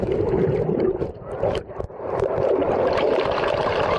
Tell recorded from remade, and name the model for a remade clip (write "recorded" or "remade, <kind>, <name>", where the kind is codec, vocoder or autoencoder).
remade, vocoder, BigVGAN v2